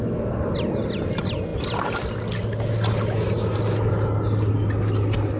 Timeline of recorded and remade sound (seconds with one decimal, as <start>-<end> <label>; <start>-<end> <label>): 0.0-5.4 recorded